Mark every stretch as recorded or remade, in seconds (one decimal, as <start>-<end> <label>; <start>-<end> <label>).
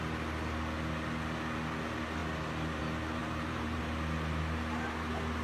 0.0-3.2 recorded; 3.2-3.8 remade; 3.8-5.4 recorded